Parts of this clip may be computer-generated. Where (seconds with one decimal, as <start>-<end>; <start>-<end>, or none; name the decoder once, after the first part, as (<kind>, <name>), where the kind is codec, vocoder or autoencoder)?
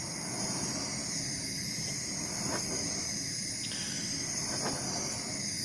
1.0-2.9 (vocoder, BigVGAN v2)